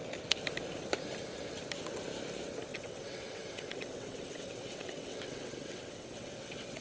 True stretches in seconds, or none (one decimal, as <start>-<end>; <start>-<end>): 0.0-2.7